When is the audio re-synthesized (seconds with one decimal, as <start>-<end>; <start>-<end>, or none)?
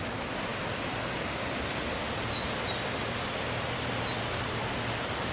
none